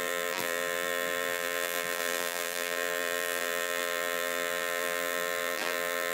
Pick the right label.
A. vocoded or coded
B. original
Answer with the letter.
A